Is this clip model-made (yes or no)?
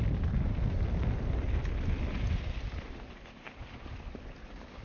no